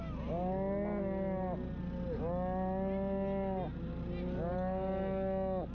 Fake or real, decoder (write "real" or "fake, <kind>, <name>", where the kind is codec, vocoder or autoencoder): real